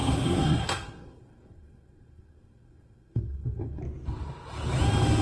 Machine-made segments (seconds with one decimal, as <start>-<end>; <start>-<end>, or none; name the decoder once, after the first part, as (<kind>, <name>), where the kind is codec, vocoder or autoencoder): 0.0-3.8 (codec, SNAC)